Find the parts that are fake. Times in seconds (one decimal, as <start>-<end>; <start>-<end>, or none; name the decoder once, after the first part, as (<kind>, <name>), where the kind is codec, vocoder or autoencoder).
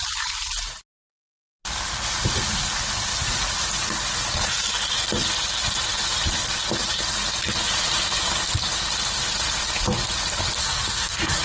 10.6-11.4 (codec, SNAC)